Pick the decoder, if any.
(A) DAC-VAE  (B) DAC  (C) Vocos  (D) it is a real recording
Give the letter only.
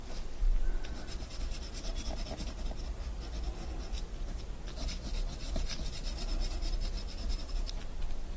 D